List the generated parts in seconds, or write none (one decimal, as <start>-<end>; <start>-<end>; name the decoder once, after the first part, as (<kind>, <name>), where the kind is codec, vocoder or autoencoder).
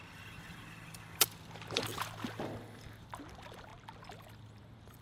0.0-3.7 (vocoder, BigVGAN v2); 4.4-5.0